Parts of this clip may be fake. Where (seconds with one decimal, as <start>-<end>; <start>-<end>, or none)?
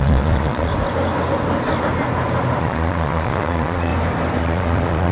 0.0-0.7; 2.6-3.9; 4.4-5.1